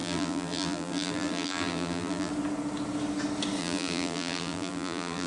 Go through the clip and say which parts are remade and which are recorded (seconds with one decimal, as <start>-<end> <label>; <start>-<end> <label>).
0.0-2.3 remade; 2.3-3.6 recorded; 3.6-5.3 remade